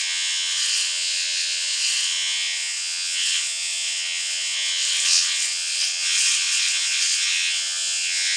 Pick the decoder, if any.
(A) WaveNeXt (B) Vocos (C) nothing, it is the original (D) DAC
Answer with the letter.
A